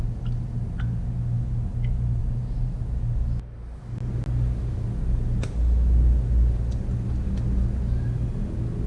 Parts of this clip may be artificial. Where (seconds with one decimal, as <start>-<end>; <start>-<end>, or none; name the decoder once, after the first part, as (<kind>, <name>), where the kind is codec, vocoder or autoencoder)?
2.2-2.8 (vocoder, BigVGAN v2)